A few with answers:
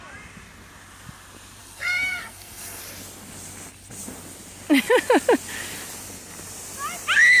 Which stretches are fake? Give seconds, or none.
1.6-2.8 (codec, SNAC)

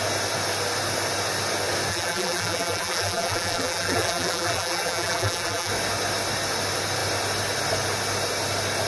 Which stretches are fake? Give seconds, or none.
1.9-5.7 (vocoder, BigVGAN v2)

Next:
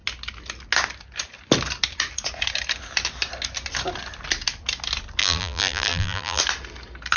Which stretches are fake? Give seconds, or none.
5.2-6.4 (vocoder, BigVGAN v2)